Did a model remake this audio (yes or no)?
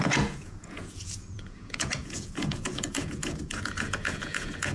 yes